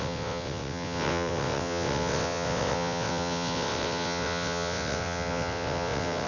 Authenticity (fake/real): fake